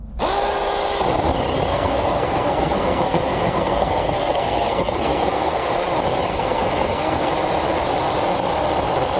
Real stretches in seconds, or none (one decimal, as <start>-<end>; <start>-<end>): 0.0-1.7; 5.7-6.3; 7.3-9.2